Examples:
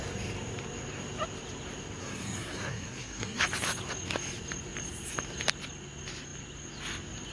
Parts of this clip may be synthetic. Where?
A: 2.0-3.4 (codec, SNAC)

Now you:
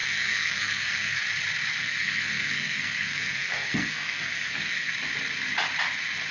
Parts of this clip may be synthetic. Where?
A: 0.0-1.2 (codec, SNAC); 1.8-4.9

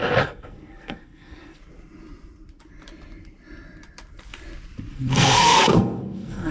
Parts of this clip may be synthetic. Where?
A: 0.0-1.6 (codec, SNAC); 4.9-6.5

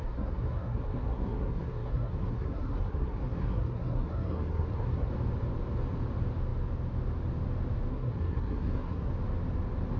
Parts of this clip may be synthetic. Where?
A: 0.0-5.1 (codec, SNAC); 7.9-9.1

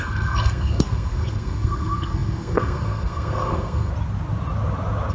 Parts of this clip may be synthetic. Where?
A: 0.0-3.9 (codec, SNAC)